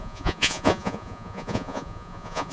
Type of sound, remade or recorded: remade